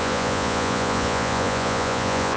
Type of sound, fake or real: fake